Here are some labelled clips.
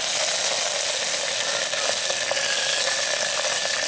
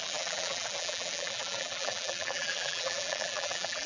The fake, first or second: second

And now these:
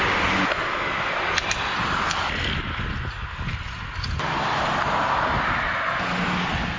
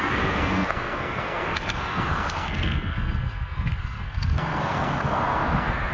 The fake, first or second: second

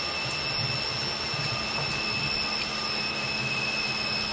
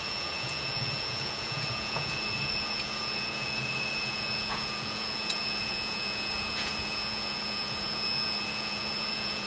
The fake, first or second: second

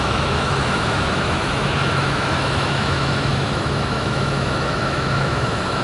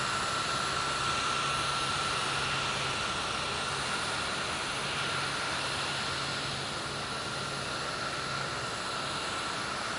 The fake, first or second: first